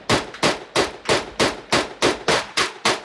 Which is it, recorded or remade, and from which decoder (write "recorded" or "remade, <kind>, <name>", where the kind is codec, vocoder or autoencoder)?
recorded